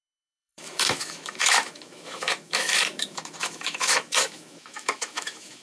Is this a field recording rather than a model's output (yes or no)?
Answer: no